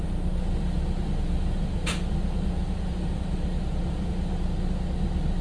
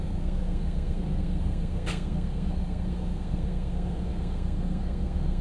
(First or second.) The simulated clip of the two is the second